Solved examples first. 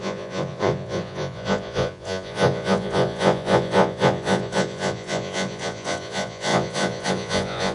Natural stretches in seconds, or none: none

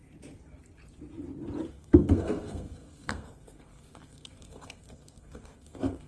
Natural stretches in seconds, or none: 0.0-1.7

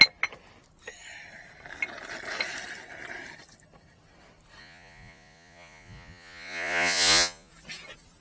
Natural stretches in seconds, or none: 0.0-4.6; 7.5-8.2

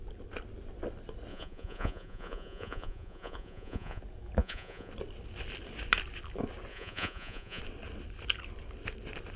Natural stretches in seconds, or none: 0.0-1.3; 4.0-4.4; 4.9-6.7; 7.6-9.4